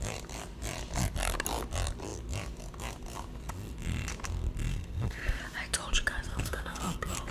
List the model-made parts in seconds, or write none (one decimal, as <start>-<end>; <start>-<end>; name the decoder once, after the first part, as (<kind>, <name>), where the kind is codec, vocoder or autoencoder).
4.7-5.4 (codec, SNAC); 6.3-6.8